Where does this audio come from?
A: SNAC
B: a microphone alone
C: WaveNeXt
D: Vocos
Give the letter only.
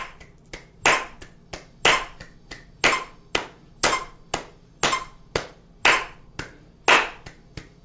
B